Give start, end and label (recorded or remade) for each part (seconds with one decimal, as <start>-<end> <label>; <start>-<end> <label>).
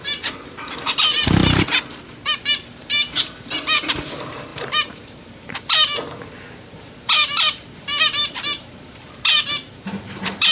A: 0.0-1.4 remade; 1.4-2.4 recorded; 2.4-10.5 remade